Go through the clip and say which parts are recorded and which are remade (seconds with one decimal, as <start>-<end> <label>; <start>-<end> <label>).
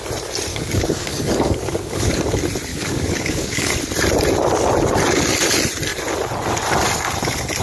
0.0-0.5 recorded; 0.5-2.2 remade; 2.2-2.7 recorded; 2.7-3.7 remade; 3.7-7.6 recorded